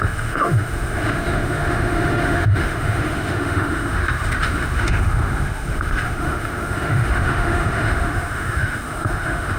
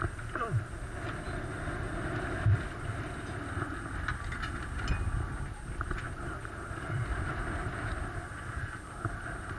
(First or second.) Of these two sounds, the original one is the second